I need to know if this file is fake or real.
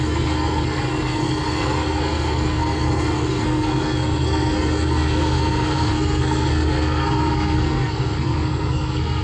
fake